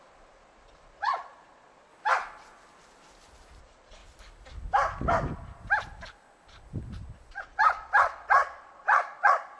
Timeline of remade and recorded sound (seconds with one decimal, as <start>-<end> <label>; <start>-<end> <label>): 0.0-1.9 remade; 1.9-3.6 recorded; 3.6-4.0 remade; 4.0-7.3 recorded; 7.3-9.6 remade